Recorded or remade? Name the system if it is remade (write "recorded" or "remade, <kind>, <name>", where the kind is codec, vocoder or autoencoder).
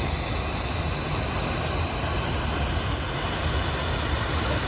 recorded